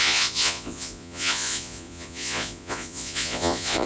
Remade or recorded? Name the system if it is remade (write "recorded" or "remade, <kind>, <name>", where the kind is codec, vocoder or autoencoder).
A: remade, vocoder, Vocos